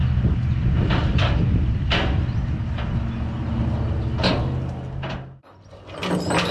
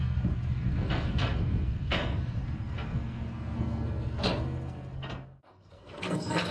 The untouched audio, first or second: first